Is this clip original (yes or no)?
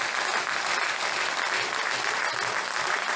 yes